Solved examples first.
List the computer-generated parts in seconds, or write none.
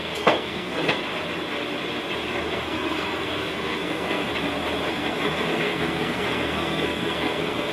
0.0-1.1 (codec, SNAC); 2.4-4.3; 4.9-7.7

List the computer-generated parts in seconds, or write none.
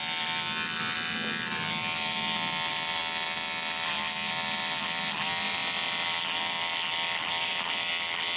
none